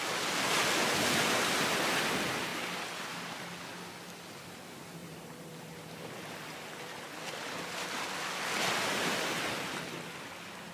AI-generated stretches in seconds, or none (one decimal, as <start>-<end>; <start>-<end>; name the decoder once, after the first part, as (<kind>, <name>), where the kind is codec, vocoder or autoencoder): none